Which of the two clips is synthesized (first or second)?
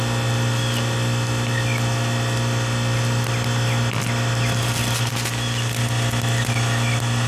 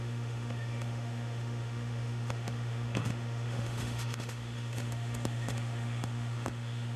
second